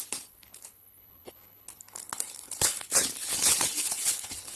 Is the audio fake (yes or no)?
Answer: yes